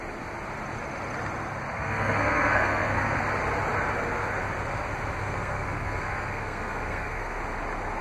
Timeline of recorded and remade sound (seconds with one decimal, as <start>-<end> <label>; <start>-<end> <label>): 0.0-1.7 recorded; 1.7-3.2 remade; 3.2-5.2 recorded; 5.2-7.4 remade; 7.4-8.0 recorded